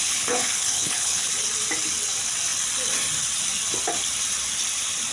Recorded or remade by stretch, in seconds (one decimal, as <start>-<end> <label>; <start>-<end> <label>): 0.0-1.3 remade; 1.3-5.1 recorded

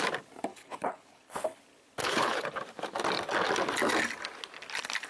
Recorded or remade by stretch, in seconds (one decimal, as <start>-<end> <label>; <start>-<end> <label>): 0.0-0.5 recorded; 0.5-1.6 remade; 1.6-2.0 recorded; 2.0-2.6 remade; 2.6-5.1 recorded

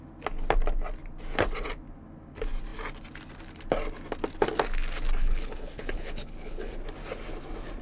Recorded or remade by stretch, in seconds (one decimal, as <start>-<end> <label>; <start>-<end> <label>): 0.0-5.2 recorded; 5.2-6.7 remade; 6.7-7.8 recorded

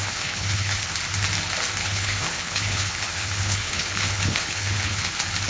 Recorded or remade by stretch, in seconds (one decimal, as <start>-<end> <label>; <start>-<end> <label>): 0.0-0.9 remade; 0.9-1.8 recorded; 1.8-5.1 remade; 5.1-5.5 recorded

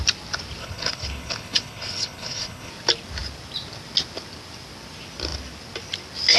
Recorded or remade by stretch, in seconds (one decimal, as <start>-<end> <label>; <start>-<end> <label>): 0.0-0.6 recorded; 0.6-2.7 remade; 2.7-6.4 recorded

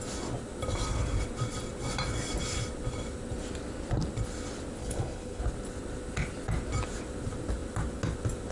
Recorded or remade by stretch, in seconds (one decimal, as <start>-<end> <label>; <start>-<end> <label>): 0.0-4.8 recorded; 4.8-5.4 remade; 5.4-8.5 recorded